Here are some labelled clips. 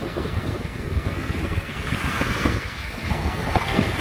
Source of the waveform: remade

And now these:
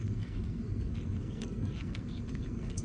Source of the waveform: remade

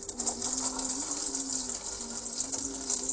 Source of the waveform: recorded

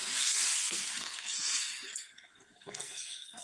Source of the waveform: remade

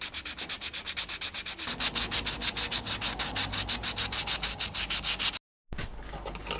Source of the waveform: recorded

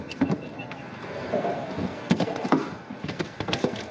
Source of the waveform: remade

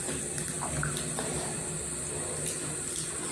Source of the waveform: recorded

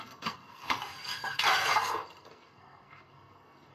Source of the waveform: remade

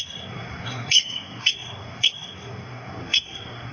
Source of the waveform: remade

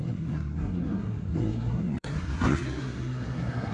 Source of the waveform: remade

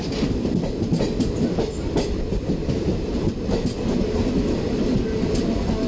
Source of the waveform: recorded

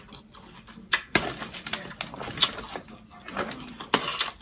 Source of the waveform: recorded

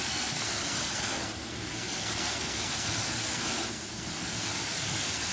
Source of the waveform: remade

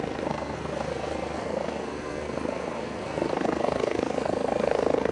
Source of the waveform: remade